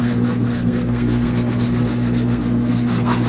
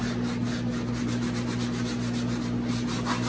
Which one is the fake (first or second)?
first